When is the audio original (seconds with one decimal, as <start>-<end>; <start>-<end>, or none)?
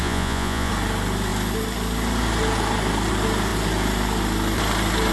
0.7-5.1